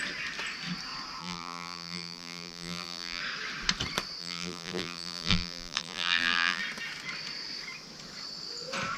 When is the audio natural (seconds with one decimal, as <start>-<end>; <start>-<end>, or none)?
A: 0.0-1.2; 3.2-4.2; 6.6-9.0